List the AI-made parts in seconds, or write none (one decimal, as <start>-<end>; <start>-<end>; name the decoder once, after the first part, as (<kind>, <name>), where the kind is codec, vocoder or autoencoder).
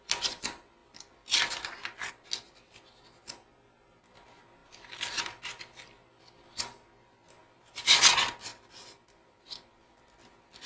0.8-2.1 (vocoder, BigVGAN v2); 4.6-5.2; 7.4-8.0; 8.5-9.9